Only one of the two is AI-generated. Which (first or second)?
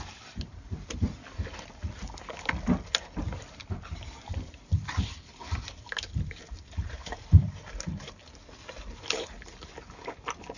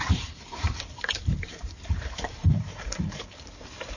second